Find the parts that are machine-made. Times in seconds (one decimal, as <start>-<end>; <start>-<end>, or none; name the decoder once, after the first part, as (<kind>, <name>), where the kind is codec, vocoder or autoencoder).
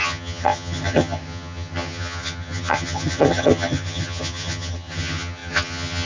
0.0-6.1 (vocoder, HiFi-GAN)